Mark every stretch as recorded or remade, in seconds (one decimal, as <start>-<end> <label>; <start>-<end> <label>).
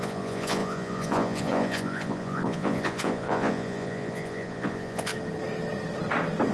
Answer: 0.0-5.1 remade; 5.1-6.5 recorded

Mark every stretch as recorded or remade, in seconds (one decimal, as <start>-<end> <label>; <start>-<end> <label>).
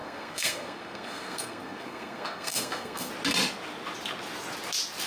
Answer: 0.0-3.1 remade; 3.1-5.1 recorded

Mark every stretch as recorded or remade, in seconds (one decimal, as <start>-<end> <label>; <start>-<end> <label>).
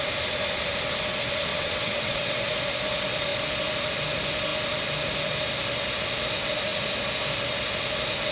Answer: 0.0-1.5 recorded; 1.5-2.4 remade; 2.4-8.3 recorded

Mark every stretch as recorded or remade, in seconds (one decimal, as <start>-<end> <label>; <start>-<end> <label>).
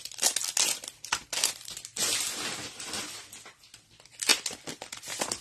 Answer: 0.0-4.3 recorded; 4.3-5.4 remade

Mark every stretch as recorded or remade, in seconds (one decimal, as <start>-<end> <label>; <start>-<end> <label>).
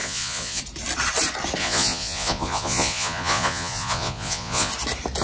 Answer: 0.0-0.6 remade; 0.6-1.6 recorded; 1.6-4.7 remade; 4.7-5.2 recorded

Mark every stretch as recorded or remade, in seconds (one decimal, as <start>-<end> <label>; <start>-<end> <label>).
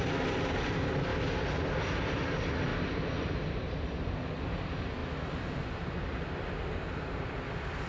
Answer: 0.0-7.9 recorded